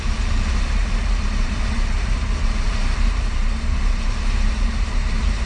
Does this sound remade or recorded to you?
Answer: remade